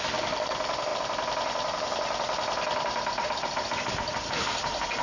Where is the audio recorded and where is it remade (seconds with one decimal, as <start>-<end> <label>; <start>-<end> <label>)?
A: 0.0-5.0 recorded